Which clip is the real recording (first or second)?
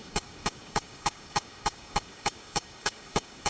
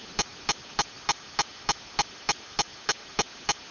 second